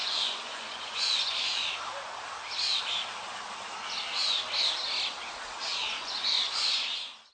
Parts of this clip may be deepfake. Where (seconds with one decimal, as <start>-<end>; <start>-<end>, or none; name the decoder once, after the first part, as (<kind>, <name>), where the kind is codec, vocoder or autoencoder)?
0.0-1.7 (vocoder, Vocos); 5.7-7.3